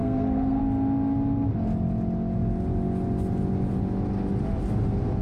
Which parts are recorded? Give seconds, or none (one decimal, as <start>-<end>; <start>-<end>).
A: 0.6-5.2